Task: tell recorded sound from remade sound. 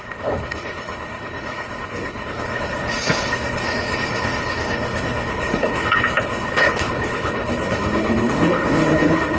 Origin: remade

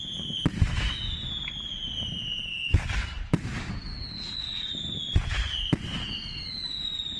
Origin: recorded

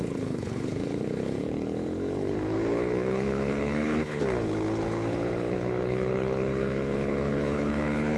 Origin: remade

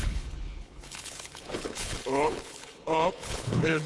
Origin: remade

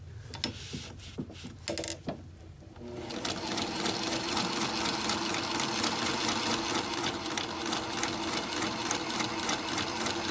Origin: recorded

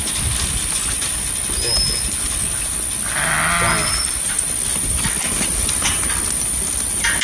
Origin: recorded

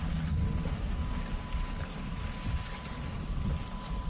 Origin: recorded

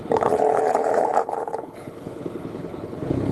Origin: remade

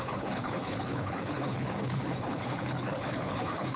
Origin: remade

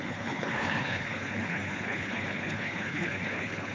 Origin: remade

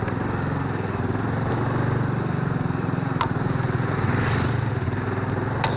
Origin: recorded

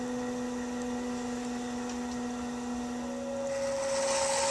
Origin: recorded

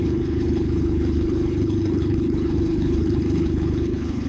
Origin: remade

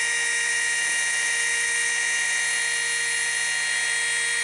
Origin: recorded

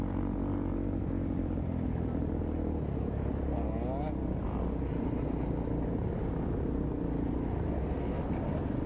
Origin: recorded